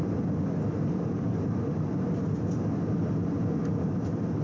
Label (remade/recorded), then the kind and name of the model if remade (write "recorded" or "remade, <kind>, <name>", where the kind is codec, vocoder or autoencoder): recorded